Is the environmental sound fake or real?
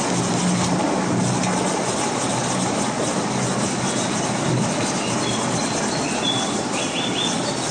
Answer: real